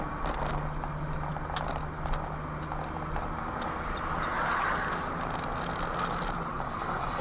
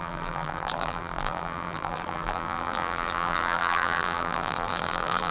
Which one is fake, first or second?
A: second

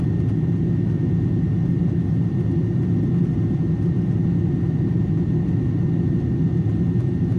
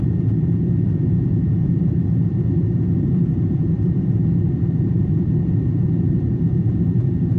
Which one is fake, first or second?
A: second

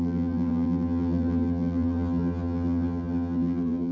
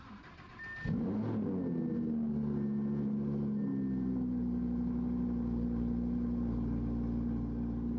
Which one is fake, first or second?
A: first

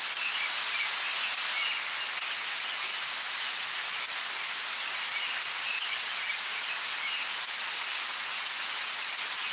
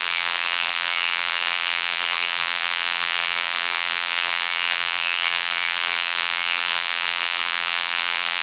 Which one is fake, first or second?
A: second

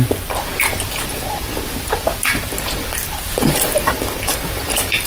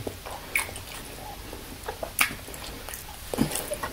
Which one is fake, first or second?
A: first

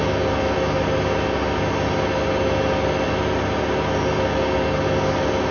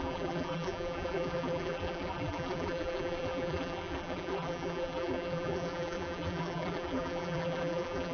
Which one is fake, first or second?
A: second